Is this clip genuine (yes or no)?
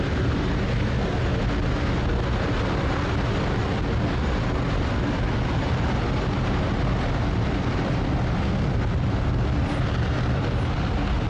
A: yes